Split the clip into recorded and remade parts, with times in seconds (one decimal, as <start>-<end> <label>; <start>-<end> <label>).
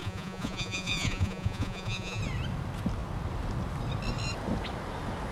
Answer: 0.0-2.2 remade; 2.2-5.3 recorded